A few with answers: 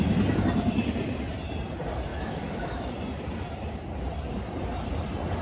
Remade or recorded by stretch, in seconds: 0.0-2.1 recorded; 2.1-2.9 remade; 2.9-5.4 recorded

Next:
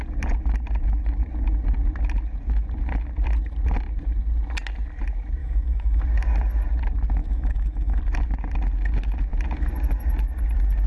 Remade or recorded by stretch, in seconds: 0.0-5.4 recorded; 5.4-6.0 remade; 6.0-7.2 recorded; 7.2-8.0 remade; 8.0-10.9 recorded

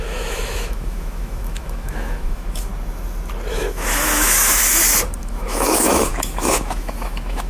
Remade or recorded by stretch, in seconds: 0.0-2.7 remade; 2.7-3.5 recorded; 3.5-4.6 remade; 4.6-5.2 recorded; 5.2-7.5 remade